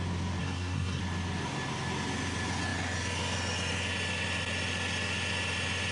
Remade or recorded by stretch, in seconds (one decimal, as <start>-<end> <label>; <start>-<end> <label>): 0.0-0.4 recorded; 0.4-1.0 remade; 1.0-5.9 recorded